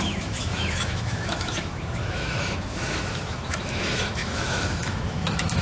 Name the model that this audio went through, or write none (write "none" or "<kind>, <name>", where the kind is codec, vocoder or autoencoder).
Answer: autoencoder, DAC-VAE